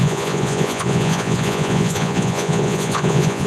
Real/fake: fake